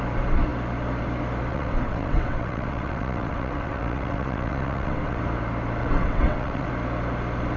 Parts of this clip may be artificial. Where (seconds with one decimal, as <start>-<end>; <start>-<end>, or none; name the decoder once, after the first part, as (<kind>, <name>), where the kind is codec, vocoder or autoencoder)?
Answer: 1.5-5.2 (vocoder, WaveNeXt); 5.8-6.7